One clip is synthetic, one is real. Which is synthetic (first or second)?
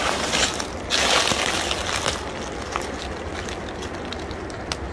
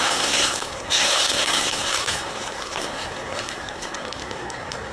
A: second